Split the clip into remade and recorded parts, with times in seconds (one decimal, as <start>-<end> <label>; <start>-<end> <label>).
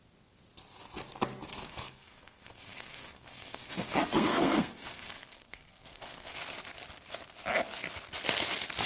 0.0-1.5 recorded; 1.5-6.4 remade; 6.4-8.9 recorded